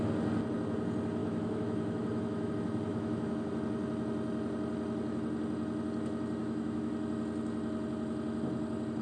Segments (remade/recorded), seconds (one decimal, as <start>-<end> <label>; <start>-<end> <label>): 0.0-1.2 recorded; 1.2-2.5 remade; 2.5-2.9 recorded; 2.9-3.5 remade; 3.5-6.4 recorded; 6.4-6.9 remade; 6.9-9.0 recorded